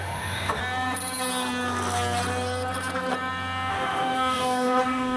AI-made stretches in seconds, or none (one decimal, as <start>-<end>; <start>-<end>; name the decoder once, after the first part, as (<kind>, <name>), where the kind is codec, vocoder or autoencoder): 0.0-0.6 (autoencoder, DAC-VAE); 3.7-5.2